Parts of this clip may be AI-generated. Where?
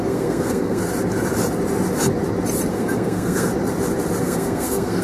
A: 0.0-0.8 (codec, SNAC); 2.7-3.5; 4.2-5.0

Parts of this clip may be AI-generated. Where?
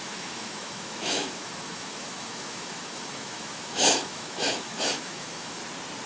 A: 0.0-5.6 (autoencoder, DAC-VAE)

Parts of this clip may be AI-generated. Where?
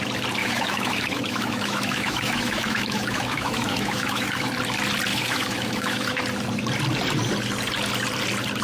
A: 0.4-4.5 (autoencoder, DAC-VAE); 5.1-6.2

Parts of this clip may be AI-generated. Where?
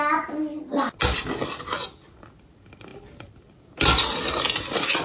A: none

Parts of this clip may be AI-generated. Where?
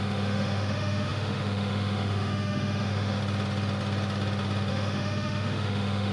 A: 0.0-3.2 (autoencoder, DAC-VAE); 4.7-6.1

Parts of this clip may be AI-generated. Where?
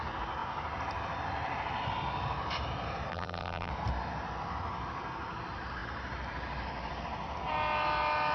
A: 3.1-3.7 (vocoder, BigVGAN v2)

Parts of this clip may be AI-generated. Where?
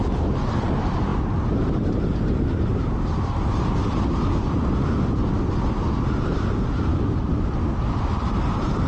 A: none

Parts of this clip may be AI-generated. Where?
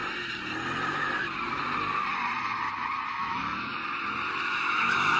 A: 3.1-3.8 (autoencoder, DAC-VAE); 4.4-5.2